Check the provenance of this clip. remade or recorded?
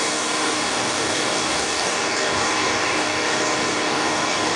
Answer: remade